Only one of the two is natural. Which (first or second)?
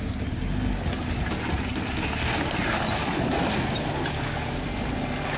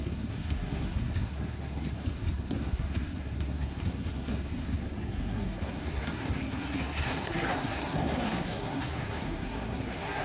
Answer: first